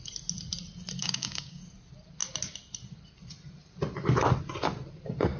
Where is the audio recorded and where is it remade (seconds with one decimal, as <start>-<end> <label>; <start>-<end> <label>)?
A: 0.0-1.0 recorded; 1.0-1.6 remade; 1.6-5.4 recorded